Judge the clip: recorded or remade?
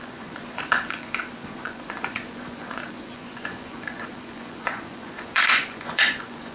remade